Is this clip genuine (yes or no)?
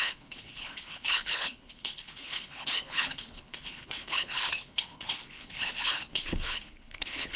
no